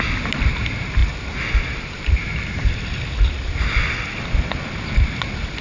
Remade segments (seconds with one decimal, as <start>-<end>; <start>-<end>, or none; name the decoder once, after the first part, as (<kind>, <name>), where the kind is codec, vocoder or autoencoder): none